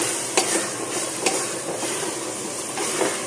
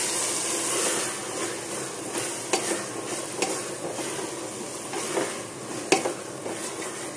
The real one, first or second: second